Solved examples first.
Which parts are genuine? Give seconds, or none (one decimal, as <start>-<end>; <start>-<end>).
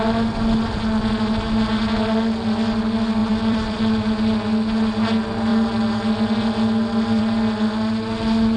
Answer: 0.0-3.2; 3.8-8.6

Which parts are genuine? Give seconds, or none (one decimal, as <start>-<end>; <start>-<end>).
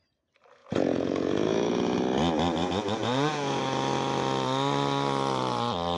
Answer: 0.0-0.6; 2.0-2.6; 3.6-6.0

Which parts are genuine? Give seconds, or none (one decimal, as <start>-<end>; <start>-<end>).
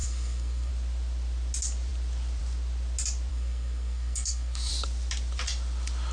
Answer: 0.7-3.3; 4.7-6.1